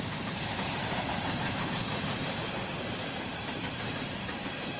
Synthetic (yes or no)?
yes